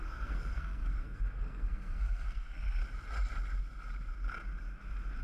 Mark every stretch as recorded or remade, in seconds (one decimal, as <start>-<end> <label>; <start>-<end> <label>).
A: 0.0-2.8 remade; 2.8-5.2 recorded

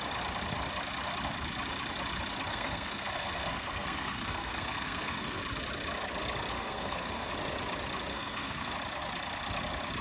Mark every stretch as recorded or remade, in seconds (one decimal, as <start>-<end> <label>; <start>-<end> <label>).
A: 0.0-2.5 recorded; 2.5-5.4 remade; 5.4-6.5 recorded; 6.5-7.3 remade; 7.3-8.1 recorded; 8.1-8.7 remade; 8.7-10.0 recorded